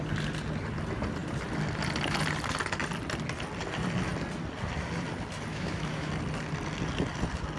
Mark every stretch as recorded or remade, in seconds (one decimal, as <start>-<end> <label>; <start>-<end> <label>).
0.0-5.5 recorded; 5.5-6.1 remade; 6.1-7.6 recorded